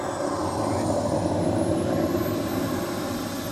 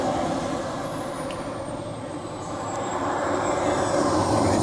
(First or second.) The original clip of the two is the first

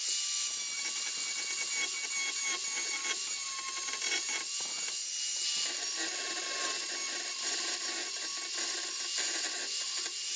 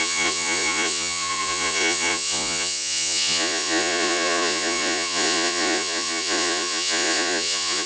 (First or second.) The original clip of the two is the first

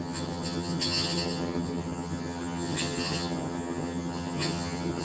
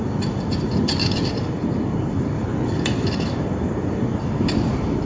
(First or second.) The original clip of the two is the second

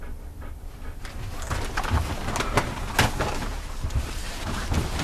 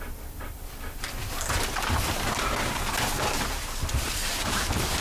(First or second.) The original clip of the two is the first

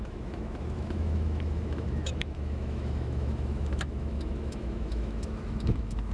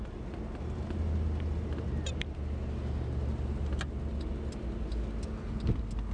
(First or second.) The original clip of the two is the second